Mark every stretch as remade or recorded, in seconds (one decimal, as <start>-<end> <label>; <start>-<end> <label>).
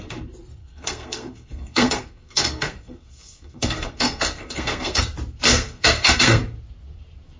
0.0-0.6 recorded; 0.6-5.0 remade; 5.0-5.5 recorded; 5.5-6.4 remade; 6.4-7.4 recorded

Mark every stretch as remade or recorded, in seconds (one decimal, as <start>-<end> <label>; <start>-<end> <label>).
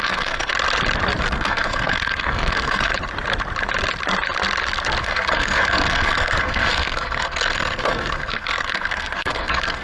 0.0-0.5 remade; 0.5-1.2 recorded; 1.2-2.9 remade; 2.9-5.0 recorded; 5.0-9.8 remade